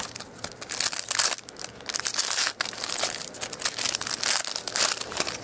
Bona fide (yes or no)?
yes